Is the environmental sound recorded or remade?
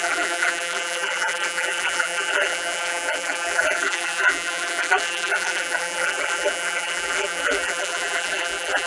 remade